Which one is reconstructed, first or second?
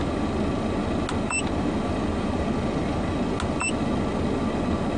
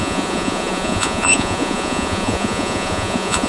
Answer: second